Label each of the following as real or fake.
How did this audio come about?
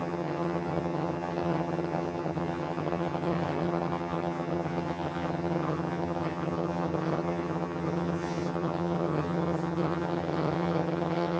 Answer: fake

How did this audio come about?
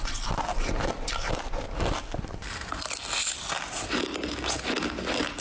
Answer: real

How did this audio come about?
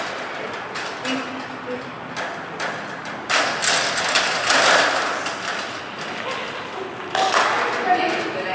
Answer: real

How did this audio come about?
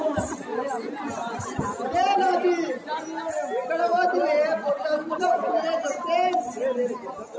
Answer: real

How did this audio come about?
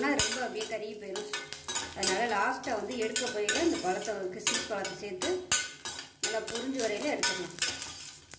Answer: real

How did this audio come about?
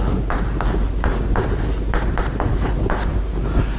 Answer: real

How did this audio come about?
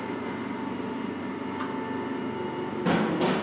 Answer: real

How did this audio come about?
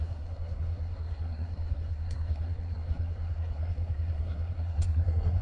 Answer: fake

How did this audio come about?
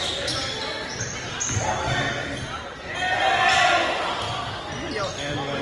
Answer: real